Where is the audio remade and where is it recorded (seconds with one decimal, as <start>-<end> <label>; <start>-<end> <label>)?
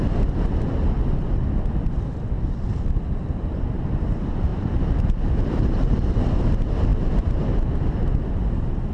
0.0-4.5 recorded; 4.5-6.3 remade; 6.3-8.9 recorded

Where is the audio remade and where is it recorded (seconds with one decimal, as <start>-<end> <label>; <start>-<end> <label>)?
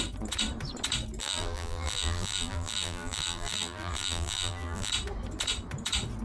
0.0-1.2 recorded; 1.2-4.9 remade; 4.9-6.2 recorded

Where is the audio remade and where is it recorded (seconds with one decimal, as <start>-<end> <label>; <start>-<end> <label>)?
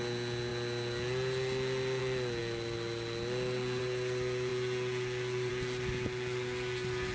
0.0-7.1 recorded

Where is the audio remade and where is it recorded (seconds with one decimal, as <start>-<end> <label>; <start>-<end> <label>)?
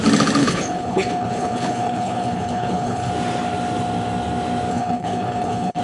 0.0-0.4 recorded; 0.4-3.1 remade; 3.1-4.7 recorded; 4.7-5.8 remade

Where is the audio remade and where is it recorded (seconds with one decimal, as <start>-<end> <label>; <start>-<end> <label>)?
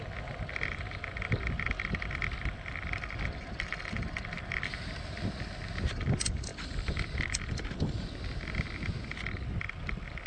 0.0-10.3 recorded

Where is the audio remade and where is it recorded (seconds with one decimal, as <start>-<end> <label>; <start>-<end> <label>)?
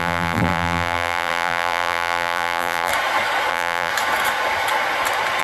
0.0-2.9 remade; 2.9-3.5 recorded; 3.5-3.9 remade; 3.9-5.4 recorded